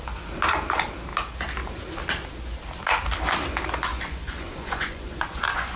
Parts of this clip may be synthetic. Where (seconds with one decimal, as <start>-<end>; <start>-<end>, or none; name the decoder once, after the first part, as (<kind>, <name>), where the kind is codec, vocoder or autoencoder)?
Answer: 3.9-5.8 (vocoder, Vocos)